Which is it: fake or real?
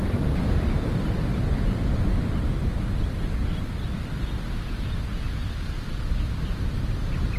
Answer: real